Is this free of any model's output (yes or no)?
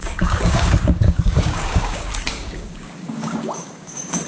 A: no